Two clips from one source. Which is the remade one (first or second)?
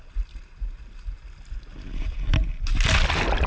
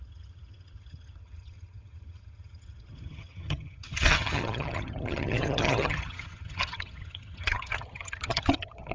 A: second